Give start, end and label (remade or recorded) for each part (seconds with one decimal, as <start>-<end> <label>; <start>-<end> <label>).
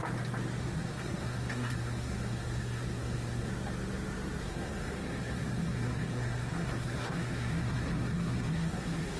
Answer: 0.0-0.6 recorded; 0.6-3.5 remade; 3.5-4.4 recorded; 4.4-9.2 remade